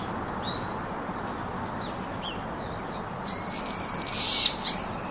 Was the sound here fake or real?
fake